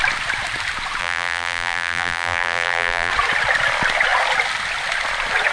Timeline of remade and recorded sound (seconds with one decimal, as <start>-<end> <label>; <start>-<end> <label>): 0.0-1.0 recorded; 1.0-3.1 remade; 3.1-5.5 recorded